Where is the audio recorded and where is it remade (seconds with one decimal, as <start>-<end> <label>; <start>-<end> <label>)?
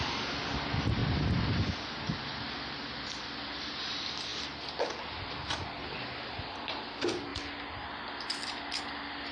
0.0-9.3 recorded